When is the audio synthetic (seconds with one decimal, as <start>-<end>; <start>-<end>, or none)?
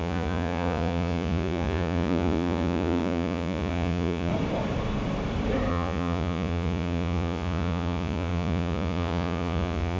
0.0-4.3; 5.7-10.0